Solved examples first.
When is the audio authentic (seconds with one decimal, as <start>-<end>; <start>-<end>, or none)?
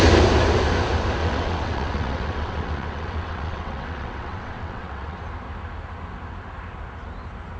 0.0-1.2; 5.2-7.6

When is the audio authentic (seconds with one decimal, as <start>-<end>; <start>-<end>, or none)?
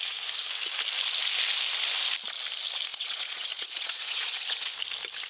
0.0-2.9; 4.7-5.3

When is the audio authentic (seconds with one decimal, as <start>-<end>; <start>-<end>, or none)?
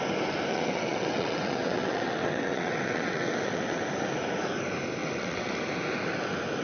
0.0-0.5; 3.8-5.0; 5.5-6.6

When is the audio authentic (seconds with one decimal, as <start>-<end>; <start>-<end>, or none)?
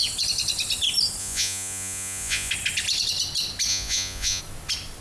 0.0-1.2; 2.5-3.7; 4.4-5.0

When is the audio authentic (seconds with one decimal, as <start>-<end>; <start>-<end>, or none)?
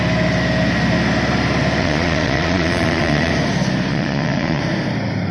0.0-1.8; 3.3-3.9; 4.6-5.3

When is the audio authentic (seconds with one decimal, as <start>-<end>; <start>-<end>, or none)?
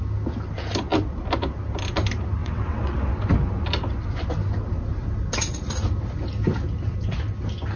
0.0-2.4; 3.1-7.8